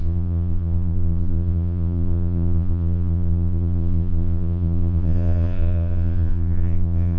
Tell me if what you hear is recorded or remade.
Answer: remade